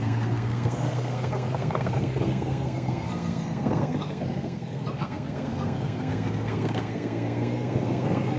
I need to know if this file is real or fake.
fake